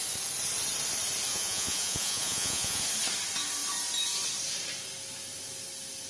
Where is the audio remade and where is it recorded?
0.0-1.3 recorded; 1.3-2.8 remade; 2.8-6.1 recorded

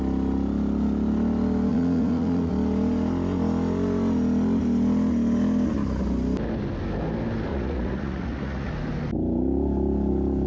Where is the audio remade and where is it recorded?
0.0-1.7 recorded; 1.7-2.5 remade; 2.5-7.5 recorded; 7.5-8.7 remade; 8.7-10.5 recorded

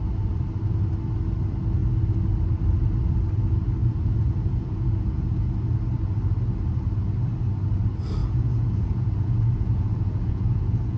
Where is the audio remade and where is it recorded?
0.0-3.8 recorded; 3.8-5.5 remade; 5.5-8.2 recorded; 8.2-11.0 remade

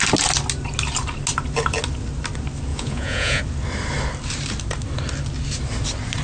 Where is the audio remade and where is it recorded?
0.0-2.7 recorded; 2.7-3.4 remade; 3.4-6.2 recorded

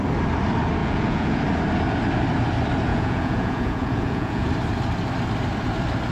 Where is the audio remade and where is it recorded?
0.0-0.8 recorded; 0.8-1.4 remade; 1.4-2.9 recorded; 2.9-4.5 remade; 4.5-6.1 recorded

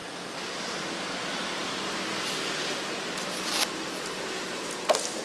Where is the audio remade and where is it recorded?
0.0-5.2 recorded